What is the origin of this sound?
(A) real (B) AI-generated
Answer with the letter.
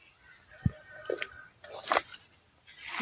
A